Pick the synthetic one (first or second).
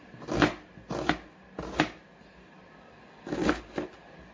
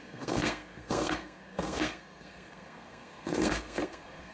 second